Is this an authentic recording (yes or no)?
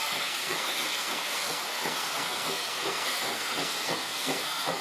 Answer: no